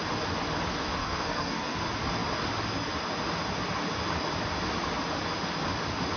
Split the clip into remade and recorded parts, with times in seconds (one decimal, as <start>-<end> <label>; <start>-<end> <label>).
0.0-1.0 recorded; 1.0-1.8 remade; 1.8-6.2 recorded